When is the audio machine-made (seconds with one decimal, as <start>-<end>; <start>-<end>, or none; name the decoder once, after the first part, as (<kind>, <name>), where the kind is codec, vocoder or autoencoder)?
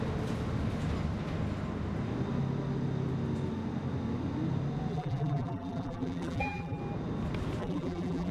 4.9-6.8 (vocoder, BigVGAN v2); 7.6-8.3